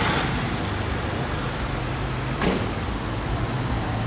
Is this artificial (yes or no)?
no